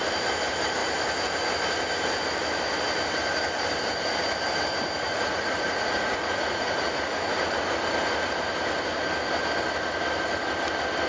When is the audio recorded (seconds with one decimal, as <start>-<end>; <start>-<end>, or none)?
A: 0.0-5.1; 7.5-11.1